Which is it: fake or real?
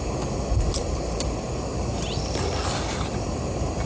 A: fake